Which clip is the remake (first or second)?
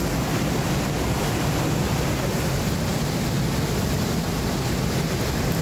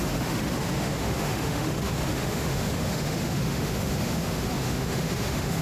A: second